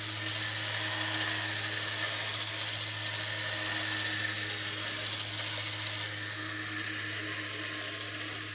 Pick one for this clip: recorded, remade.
recorded